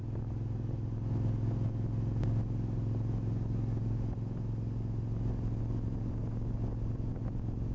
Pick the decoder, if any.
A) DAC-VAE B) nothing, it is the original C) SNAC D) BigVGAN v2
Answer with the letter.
B